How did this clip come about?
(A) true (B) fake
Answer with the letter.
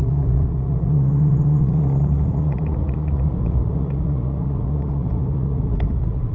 B